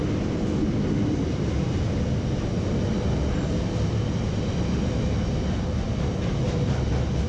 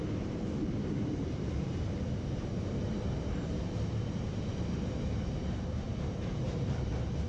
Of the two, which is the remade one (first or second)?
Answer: second